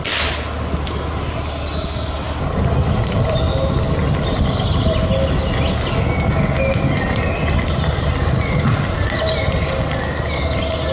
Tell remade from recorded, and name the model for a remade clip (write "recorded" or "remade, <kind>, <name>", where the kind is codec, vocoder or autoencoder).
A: recorded